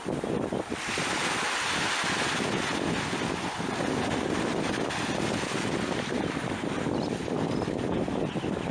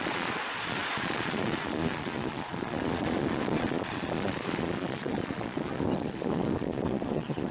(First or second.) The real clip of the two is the first